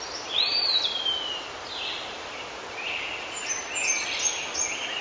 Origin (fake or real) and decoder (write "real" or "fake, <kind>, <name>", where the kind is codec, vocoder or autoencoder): real